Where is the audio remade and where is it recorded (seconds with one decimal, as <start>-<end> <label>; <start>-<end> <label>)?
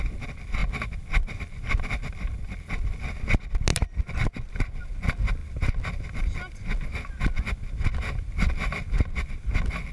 0.0-9.9 recorded